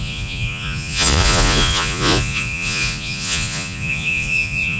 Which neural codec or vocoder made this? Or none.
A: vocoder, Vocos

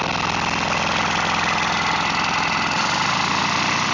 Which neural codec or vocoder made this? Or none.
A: none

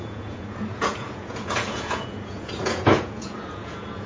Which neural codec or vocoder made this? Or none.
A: vocoder, Vocos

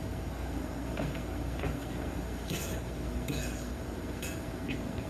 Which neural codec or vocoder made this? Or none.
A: codec, SNAC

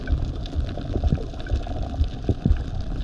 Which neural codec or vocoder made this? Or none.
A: none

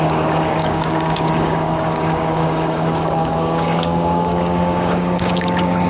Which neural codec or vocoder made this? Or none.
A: codec, DAC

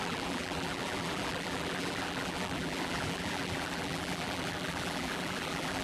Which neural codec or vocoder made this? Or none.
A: vocoder, BigVGAN v2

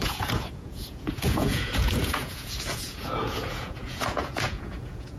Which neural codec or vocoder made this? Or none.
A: vocoder, Vocos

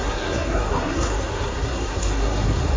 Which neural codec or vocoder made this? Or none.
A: codec, SNAC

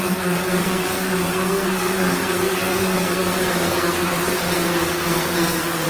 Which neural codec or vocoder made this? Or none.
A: codec, SNAC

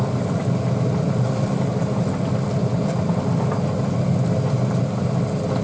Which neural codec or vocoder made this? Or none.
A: none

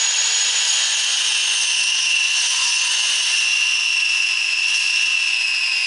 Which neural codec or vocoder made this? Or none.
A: vocoder, Vocos